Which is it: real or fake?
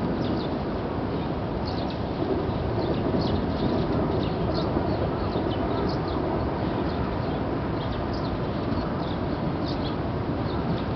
real